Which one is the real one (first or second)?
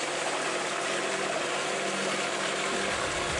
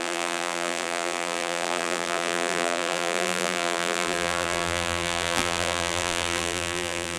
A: first